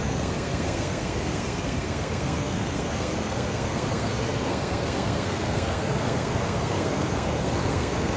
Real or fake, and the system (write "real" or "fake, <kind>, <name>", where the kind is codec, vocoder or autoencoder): fake, codec, SNAC